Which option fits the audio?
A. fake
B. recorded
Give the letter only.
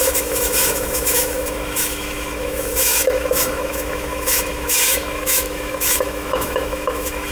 A